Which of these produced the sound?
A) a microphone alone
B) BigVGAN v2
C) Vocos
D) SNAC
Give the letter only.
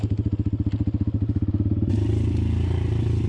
A